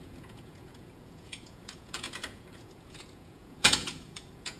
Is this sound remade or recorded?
remade